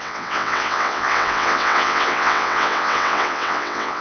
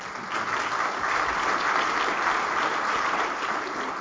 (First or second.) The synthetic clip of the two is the first